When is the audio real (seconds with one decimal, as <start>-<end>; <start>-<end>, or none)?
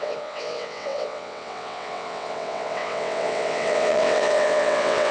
none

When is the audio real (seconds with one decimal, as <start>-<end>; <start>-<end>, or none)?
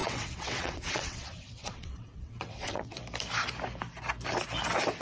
3.0-5.0